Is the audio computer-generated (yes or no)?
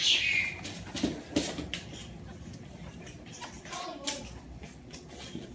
no